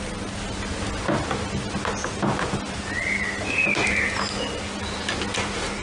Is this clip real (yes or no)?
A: yes